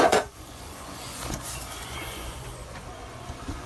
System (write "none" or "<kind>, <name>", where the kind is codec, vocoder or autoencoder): vocoder, Vocos